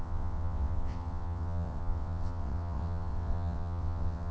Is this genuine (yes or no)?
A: no